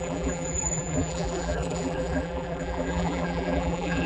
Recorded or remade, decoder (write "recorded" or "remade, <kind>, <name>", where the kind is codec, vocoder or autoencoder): remade, vocoder, BigVGAN v2